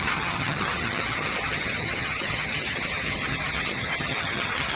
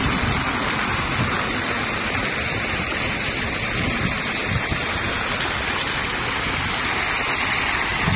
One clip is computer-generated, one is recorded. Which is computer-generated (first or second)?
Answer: first